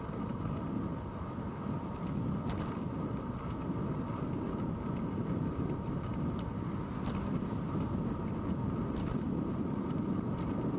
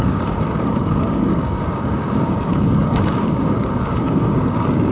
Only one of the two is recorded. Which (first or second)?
first